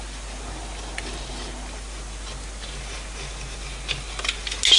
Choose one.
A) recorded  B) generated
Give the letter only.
A